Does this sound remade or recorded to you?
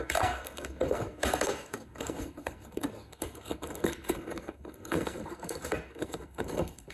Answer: remade